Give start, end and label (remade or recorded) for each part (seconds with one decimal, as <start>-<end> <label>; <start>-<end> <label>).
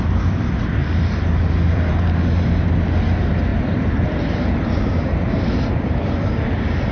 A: 0.0-0.8 recorded; 0.8-1.9 remade; 1.9-3.5 recorded; 3.5-6.2 remade; 6.2-6.9 recorded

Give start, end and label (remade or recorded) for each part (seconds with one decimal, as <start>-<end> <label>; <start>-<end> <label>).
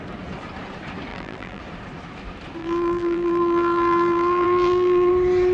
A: 0.0-1.1 recorded; 1.1-1.6 remade; 1.6-2.6 recorded; 2.6-5.1 remade; 5.1-5.5 recorded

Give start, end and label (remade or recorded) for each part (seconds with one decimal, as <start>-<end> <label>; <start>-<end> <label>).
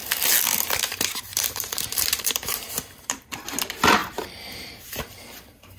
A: 0.0-1.3 recorded; 1.3-2.7 remade; 2.7-4.0 recorded; 4.0-5.0 remade; 5.0-5.8 recorded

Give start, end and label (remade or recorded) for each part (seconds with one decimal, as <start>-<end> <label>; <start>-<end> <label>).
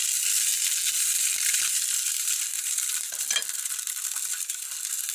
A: 0.0-0.5 recorded; 0.5-1.6 remade; 1.6-2.5 recorded; 2.5-3.2 remade; 3.2-5.1 recorded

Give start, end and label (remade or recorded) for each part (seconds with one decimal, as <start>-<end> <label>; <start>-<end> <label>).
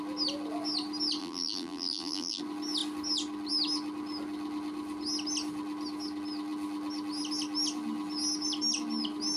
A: 0.0-1.2 recorded; 1.2-2.4 remade; 2.4-9.4 recorded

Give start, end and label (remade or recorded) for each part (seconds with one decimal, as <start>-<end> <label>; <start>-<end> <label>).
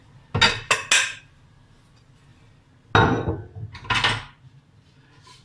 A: 0.0-5.4 recorded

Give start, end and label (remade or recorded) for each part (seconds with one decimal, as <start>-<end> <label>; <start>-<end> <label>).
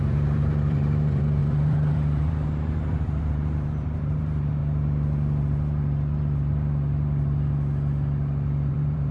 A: 0.0-4.6 remade; 4.6-8.7 recorded; 8.7-9.1 remade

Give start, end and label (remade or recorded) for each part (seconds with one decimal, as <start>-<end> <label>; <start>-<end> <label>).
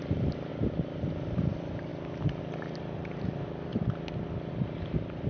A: 0.0-0.5 remade; 0.5-1.1 recorded; 1.1-1.9 remade; 1.9-2.4 recorded; 2.4-3.7 remade; 3.7-4.5 recorded; 4.5-5.3 remade